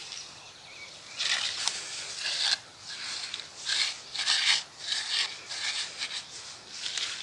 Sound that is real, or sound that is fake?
real